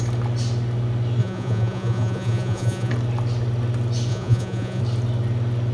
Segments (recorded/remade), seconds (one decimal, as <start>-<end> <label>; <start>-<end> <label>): 0.0-1.2 recorded; 1.2-2.9 remade; 2.9-4.1 recorded; 4.1-4.8 remade; 4.8-5.7 recorded